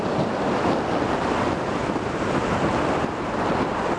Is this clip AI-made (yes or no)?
no